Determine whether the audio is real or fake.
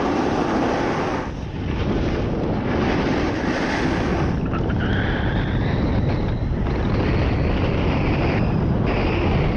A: real